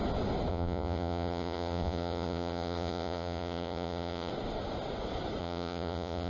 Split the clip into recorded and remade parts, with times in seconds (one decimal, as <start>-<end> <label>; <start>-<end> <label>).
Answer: 0.0-0.5 recorded; 0.5-4.3 remade; 4.3-5.4 recorded; 5.4-6.3 remade